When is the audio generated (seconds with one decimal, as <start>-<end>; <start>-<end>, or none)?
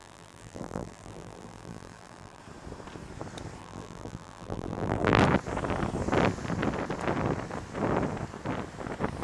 0.0-2.4; 3.6-5.2